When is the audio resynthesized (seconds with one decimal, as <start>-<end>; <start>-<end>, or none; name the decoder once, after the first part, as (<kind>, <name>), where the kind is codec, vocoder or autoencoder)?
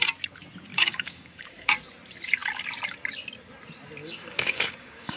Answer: 0.7-1.7 (codec, DAC); 4.0-5.2